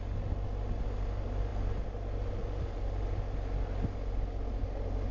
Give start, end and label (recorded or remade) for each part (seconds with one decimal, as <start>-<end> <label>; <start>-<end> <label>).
0.0-5.1 recorded

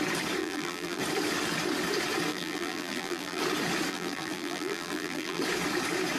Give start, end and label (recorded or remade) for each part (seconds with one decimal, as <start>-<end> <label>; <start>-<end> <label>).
0.0-0.4 recorded; 0.4-1.0 remade; 1.0-2.3 recorded; 2.3-3.4 remade; 3.4-3.9 recorded; 3.9-5.4 remade; 5.4-6.2 recorded